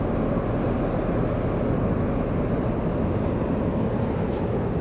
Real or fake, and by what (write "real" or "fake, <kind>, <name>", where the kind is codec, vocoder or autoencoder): real